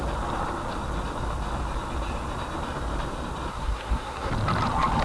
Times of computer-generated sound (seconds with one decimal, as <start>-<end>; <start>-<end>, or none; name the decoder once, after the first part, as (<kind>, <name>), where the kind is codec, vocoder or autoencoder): 3.5-4.3 (codec, SNAC)